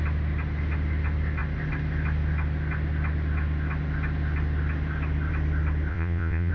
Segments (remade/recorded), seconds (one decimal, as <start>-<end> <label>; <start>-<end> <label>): 0.0-5.9 recorded; 5.9-6.5 remade